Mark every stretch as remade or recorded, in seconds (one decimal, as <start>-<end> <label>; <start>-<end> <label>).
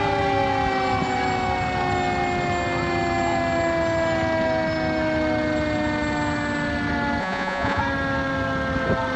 0.0-7.2 recorded; 7.2-7.8 remade; 7.8-9.2 recorded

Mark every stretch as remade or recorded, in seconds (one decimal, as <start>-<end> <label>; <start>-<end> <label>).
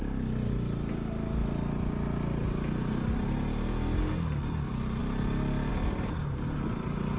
0.0-7.2 recorded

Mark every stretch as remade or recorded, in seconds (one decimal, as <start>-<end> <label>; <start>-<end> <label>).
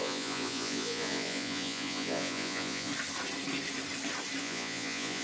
0.0-2.9 remade; 2.9-4.4 recorded; 4.4-5.2 remade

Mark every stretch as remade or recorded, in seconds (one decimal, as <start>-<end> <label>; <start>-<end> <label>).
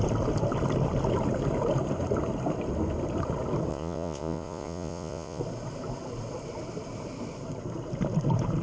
0.0-3.7 recorded; 3.7-5.4 remade; 5.4-8.6 recorded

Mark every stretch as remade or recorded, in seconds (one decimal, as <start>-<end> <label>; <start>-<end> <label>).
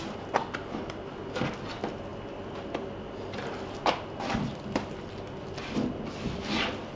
0.0-7.0 recorded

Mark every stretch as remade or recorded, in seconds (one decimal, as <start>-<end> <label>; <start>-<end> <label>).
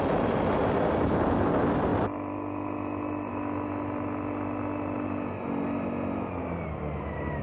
0.0-7.4 recorded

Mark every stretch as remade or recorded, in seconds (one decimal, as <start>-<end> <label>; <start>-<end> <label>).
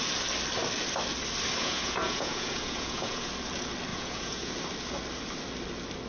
0.0-1.6 recorded; 1.6-3.3 remade; 3.3-3.9 recorded; 3.9-4.5 remade; 4.5-6.1 recorded